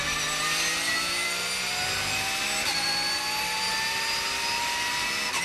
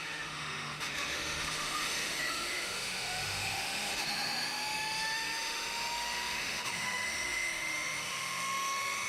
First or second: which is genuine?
first